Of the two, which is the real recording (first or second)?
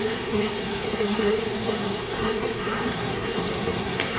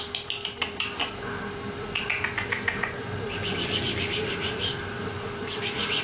second